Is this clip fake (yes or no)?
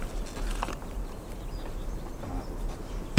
yes